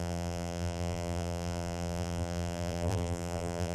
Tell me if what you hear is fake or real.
fake